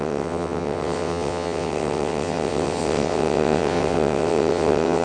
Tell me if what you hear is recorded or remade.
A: remade